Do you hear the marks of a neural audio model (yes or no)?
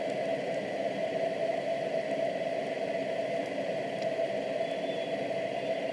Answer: no